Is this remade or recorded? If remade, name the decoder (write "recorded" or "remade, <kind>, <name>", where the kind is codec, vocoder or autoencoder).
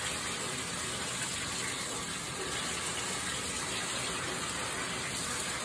recorded